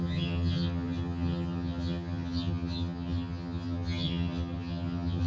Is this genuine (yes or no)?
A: no